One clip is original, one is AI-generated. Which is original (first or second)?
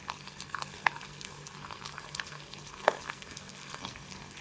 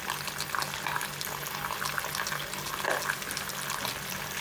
second